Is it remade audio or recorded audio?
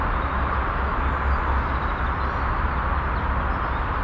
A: recorded